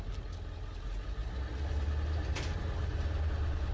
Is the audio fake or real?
real